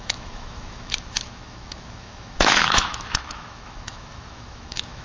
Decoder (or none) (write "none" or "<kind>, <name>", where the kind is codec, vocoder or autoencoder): autoencoder, DAC-VAE